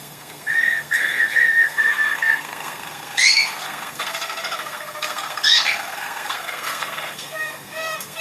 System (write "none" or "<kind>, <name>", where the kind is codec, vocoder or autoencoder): codec, SNAC